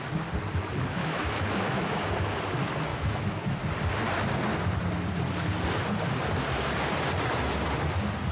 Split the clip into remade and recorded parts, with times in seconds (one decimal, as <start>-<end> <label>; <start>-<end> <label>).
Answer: 0.0-1.0 recorded; 1.0-2.0 remade; 2.0-2.9 recorded; 2.9-3.6 remade; 3.6-8.3 recorded